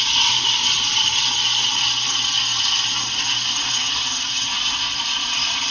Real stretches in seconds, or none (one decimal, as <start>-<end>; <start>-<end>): 0.0-5.7